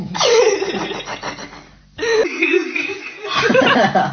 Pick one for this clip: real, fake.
fake